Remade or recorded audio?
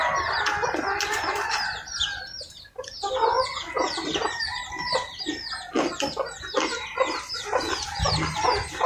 recorded